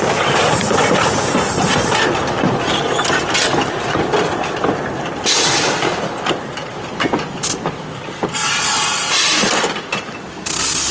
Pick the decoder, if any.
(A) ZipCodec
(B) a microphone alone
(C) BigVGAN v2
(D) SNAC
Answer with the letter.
B